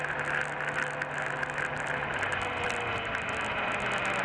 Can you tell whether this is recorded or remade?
recorded